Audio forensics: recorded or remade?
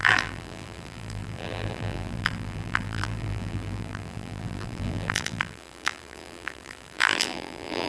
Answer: remade